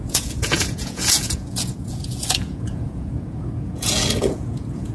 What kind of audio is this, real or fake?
fake